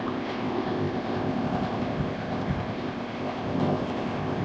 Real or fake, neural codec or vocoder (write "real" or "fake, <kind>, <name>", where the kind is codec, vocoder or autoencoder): fake, codec, ZipCodec